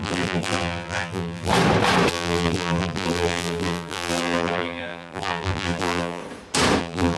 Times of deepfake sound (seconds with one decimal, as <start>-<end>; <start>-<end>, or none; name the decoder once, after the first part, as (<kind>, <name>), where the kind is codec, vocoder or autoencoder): 0.0-1.5 (vocoder, BigVGAN v2); 2.1-6.2; 6.8-7.2